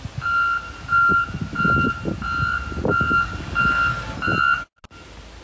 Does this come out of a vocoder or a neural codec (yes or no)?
no